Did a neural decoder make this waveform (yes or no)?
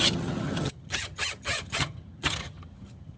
yes